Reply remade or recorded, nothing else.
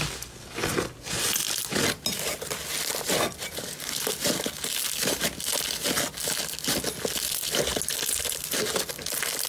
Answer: recorded